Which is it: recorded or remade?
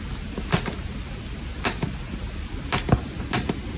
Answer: recorded